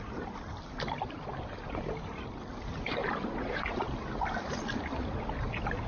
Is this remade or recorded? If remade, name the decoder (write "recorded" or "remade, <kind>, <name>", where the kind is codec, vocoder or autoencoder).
recorded